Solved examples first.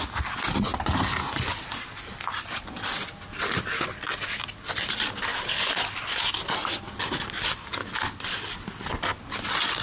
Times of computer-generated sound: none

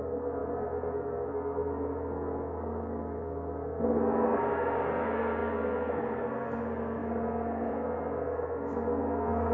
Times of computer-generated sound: 0.0-9.5 (codec, SNAC)

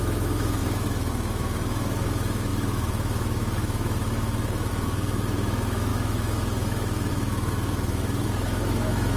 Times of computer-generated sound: 0.0-9.2 (autoencoder, DAC-VAE)